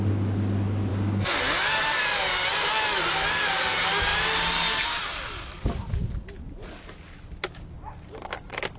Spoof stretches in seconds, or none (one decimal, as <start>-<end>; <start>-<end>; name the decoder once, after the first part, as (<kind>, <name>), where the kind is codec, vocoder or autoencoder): none